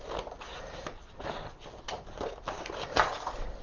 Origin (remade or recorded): recorded